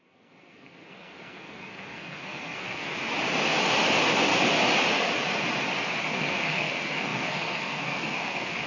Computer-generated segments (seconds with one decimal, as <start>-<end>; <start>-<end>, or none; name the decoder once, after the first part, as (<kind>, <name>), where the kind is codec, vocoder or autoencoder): 0.0-2.9 (codec, SNAC); 6.0-8.7

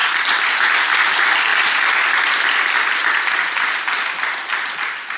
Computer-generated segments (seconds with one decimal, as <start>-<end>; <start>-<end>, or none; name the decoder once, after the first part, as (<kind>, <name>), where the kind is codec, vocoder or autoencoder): none